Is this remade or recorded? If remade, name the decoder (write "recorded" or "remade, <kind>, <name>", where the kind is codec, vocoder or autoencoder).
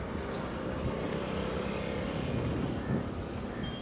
recorded